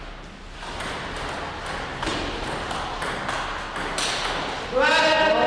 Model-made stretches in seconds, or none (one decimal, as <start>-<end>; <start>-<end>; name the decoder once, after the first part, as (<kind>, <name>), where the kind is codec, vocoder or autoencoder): none